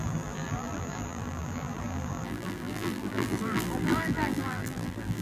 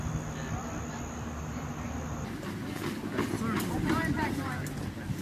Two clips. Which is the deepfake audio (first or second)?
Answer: first